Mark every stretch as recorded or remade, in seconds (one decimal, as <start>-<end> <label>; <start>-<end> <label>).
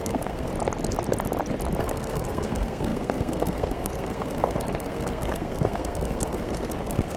0.0-0.5 remade; 0.5-1.8 recorded; 1.8-7.2 remade